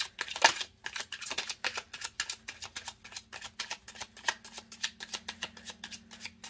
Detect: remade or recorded recorded